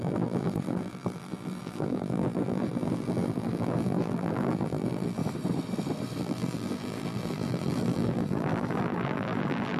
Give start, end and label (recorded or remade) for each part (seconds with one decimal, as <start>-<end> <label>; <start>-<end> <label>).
0.0-5.2 remade; 5.2-6.2 recorded; 6.2-9.8 remade